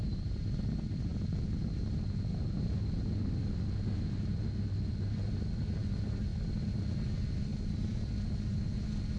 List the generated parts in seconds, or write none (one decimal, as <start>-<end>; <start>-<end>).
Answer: none